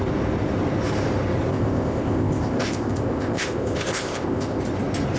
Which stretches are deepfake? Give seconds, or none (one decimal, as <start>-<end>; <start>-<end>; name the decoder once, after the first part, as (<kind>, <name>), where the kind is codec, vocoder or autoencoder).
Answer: 1.5-4.6 (codec, ZipCodec)